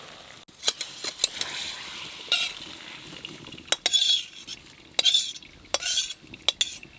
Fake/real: real